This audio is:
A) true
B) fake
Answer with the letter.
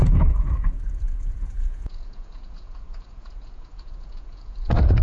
B